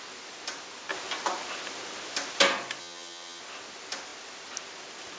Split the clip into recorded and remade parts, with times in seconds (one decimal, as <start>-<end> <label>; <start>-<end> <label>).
0.0-2.8 recorded; 2.8-3.4 remade; 3.4-5.2 recorded